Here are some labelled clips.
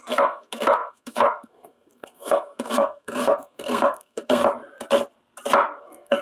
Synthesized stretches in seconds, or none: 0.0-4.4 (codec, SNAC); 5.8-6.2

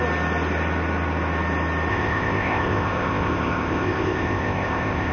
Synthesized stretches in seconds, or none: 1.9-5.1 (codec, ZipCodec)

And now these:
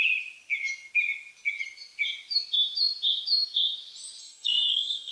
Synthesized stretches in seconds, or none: 4.2-5.1 (codec, DAC)

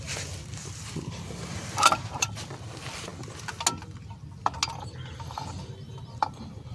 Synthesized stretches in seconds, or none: 0.0-3.1 (vocoder, BigVGAN v2); 5.7-6.7

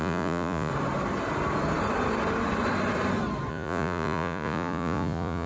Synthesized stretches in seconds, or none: 0.0-0.7 (vocoder, Vocos); 3.5-5.5